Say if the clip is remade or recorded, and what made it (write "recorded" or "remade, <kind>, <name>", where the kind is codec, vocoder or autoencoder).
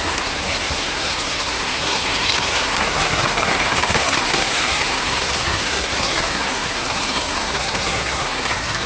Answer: remade, codec, SNAC